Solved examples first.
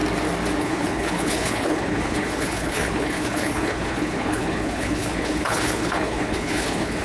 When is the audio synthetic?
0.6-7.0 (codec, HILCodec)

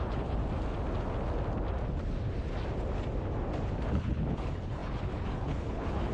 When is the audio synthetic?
0.0-0.4 (codec, HILCodec); 3.9-6.1

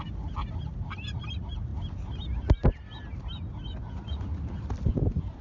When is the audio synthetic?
none

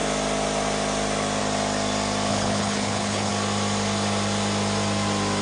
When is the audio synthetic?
2.3-3.3 (codec, HILCodec)